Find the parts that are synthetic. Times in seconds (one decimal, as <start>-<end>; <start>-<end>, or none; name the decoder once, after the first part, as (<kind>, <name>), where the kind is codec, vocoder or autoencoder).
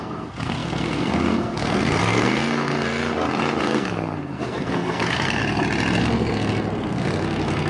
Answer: 0.0-3.0 (codec, SNAC); 3.6-5.4; 6.0-7.7